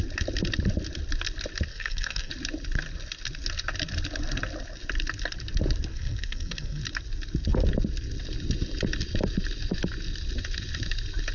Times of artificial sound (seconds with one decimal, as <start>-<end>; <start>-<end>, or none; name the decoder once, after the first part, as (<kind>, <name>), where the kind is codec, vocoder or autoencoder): 1.7-2.3 (codec, SNAC); 5.9-6.8